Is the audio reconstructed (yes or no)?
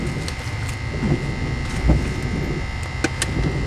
no